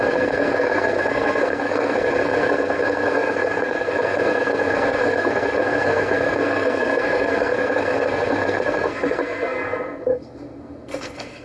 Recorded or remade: remade